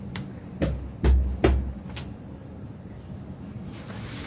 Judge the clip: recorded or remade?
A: recorded